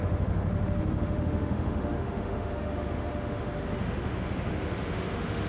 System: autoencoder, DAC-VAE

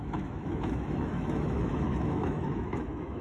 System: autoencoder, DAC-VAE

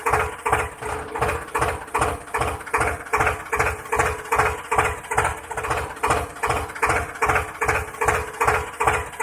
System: none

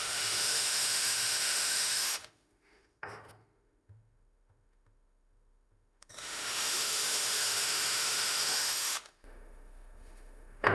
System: autoencoder, DAC-VAE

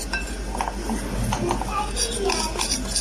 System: none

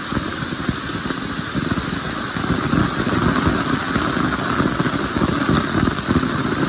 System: none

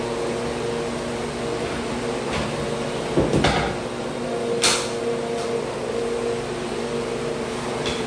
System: none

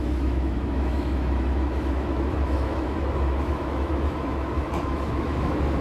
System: autoencoder, DAC-VAE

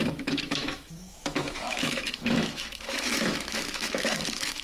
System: autoencoder, DAC-VAE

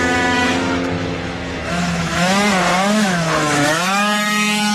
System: autoencoder, DAC-VAE